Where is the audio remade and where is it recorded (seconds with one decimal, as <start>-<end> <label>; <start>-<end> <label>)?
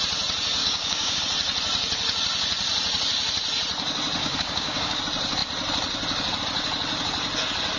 0.0-0.6 recorded; 0.6-1.2 remade; 1.2-4.2 recorded; 4.2-5.0 remade; 5.0-7.8 recorded